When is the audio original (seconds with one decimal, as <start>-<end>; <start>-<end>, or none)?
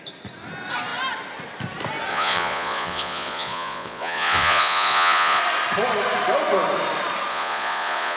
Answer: 0.0-2.1; 5.4-7.3